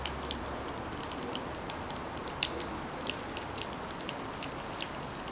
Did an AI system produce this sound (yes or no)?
yes